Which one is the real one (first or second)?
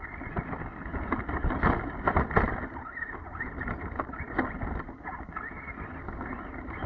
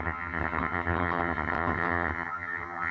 first